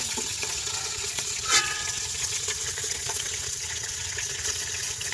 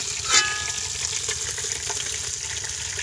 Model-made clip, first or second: first